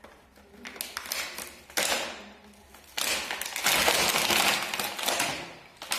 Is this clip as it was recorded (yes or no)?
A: yes